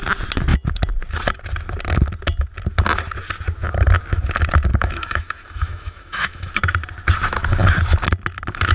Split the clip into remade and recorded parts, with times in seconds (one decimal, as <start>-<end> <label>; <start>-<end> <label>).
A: 0.0-4.7 recorded; 4.7-6.5 remade; 6.5-8.7 recorded

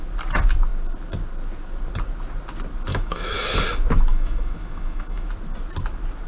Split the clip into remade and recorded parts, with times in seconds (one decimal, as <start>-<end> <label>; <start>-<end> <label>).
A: 0.0-2.9 recorded; 2.9-3.5 remade; 3.5-4.1 recorded; 4.1-5.3 remade; 5.3-6.3 recorded

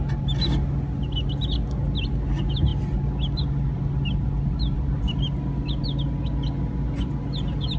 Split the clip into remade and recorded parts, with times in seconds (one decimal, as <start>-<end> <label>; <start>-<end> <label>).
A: 0.0-7.8 recorded

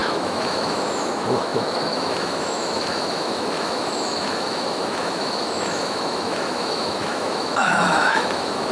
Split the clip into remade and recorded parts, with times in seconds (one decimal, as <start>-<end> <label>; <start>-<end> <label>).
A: 0.0-8.7 remade

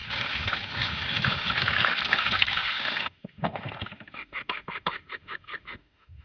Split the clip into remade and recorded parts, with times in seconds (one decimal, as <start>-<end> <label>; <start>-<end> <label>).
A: 0.0-6.2 remade

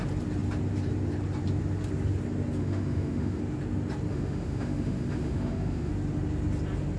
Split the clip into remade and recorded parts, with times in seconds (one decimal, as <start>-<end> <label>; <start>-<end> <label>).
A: 0.0-2.6 recorded; 2.6-3.4 remade; 3.4-4.1 recorded; 4.1-5.9 remade; 5.9-7.0 recorded